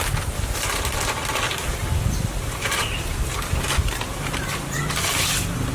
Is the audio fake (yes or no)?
no